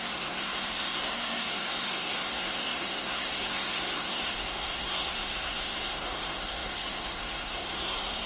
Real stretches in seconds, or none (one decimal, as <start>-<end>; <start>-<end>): none